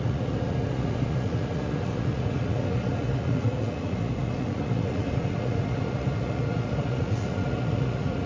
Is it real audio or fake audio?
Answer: fake